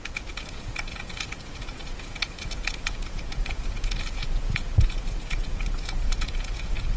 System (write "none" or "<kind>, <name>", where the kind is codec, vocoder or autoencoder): vocoder, Vocos